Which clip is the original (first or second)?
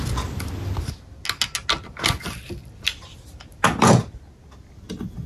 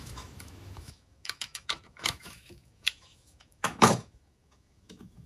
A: first